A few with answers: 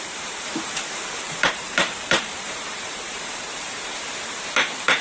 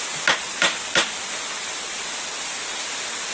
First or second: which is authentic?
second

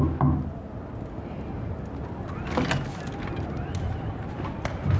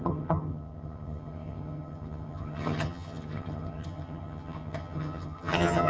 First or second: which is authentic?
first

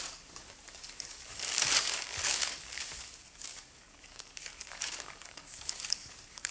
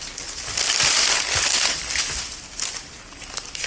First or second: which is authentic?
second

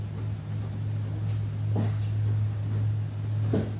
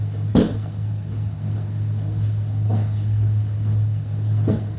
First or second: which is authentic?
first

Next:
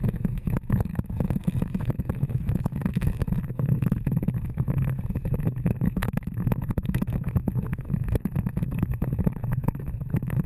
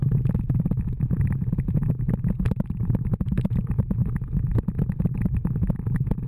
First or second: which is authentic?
second